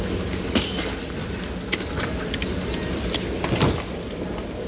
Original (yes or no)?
yes